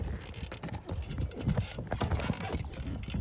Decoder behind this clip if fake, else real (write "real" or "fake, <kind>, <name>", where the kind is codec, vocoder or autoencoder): real